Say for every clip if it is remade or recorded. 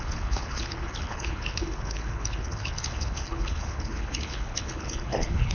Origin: remade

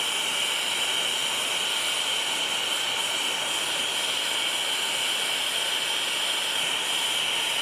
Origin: recorded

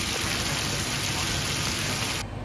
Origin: recorded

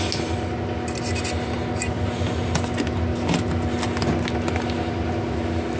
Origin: recorded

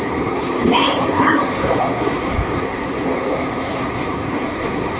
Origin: remade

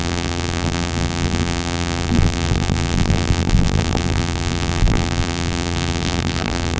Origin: remade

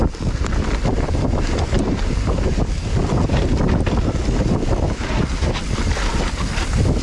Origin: recorded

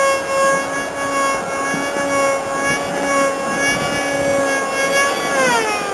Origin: recorded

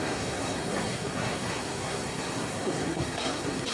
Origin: remade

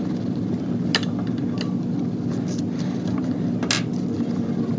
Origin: recorded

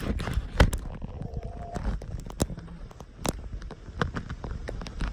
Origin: recorded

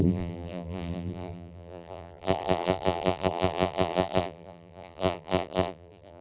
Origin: remade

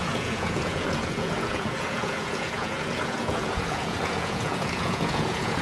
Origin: remade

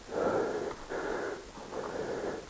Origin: recorded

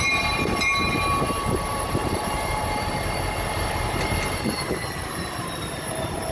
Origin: remade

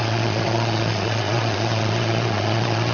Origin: remade